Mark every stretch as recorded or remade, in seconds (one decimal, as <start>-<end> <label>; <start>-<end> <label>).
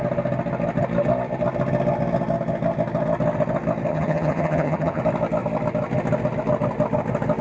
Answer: 0.0-3.9 recorded; 3.9-5.0 remade; 5.0-7.4 recorded